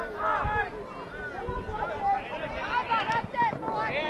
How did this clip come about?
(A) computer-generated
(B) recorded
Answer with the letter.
B